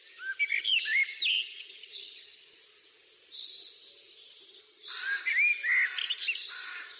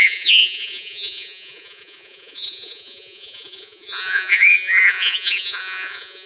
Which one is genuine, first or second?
first